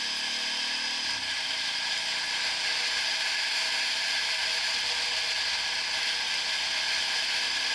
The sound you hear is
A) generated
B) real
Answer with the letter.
B